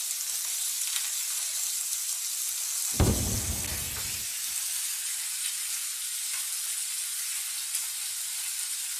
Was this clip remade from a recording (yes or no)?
no